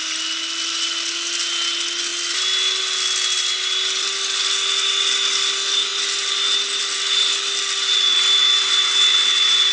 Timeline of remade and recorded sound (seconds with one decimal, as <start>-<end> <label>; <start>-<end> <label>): 0.0-9.7 recorded